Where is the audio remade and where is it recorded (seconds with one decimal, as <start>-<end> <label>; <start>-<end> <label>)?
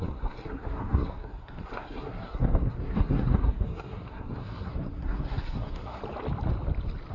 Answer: 0.0-6.0 remade; 6.0-7.1 recorded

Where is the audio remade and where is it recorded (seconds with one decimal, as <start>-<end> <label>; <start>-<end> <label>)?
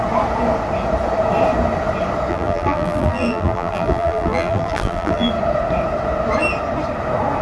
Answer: 0.0-2.3 recorded; 2.3-5.3 remade; 5.3-7.4 recorded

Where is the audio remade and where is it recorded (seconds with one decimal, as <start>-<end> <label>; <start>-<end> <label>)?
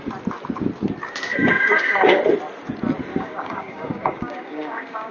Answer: 0.0-1.3 recorded; 1.3-2.2 remade; 2.2-3.1 recorded; 3.1-5.1 remade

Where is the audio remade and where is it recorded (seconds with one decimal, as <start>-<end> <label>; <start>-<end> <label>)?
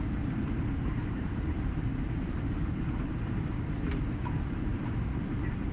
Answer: 0.0-5.7 remade